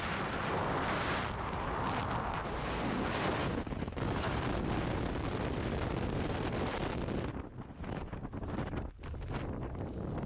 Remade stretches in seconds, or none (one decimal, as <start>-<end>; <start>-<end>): 3.4-4.4